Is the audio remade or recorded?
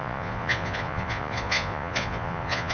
remade